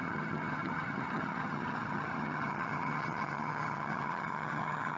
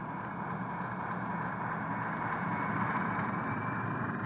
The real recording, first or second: second